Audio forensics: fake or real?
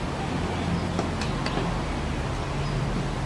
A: real